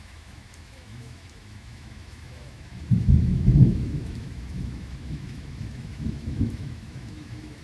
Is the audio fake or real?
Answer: fake